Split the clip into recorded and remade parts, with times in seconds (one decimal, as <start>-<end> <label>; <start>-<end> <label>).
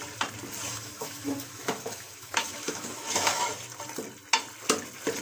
0.0-0.7 recorded; 0.7-3.5 remade; 3.5-5.2 recorded